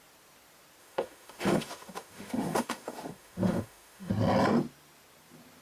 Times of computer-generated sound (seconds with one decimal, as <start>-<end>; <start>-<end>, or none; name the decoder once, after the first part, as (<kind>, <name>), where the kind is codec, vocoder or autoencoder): 0.8-4.1 (autoencoder, DAC-VAE)